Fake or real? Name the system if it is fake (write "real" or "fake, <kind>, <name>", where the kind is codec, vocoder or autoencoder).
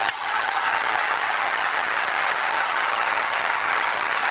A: fake, vocoder, HiFi-GAN